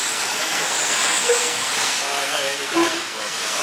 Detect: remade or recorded remade